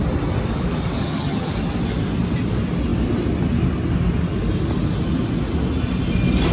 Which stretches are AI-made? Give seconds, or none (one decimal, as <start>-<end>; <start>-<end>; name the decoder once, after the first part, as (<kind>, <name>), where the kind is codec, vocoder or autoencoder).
1.0-1.5 (vocoder, HiFi-GAN)